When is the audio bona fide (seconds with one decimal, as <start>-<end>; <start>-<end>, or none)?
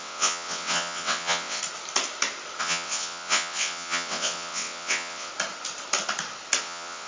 1.6-2.6; 5.3-6.6